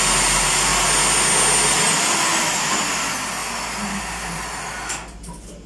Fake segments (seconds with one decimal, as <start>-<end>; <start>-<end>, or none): none